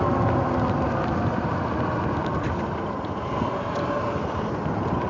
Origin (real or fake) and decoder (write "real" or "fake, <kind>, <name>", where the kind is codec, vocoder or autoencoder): real